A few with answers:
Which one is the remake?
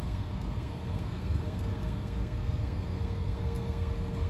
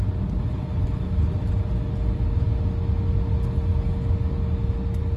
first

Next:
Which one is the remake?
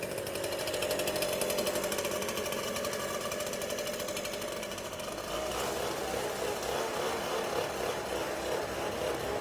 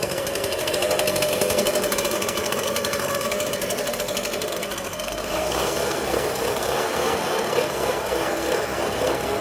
second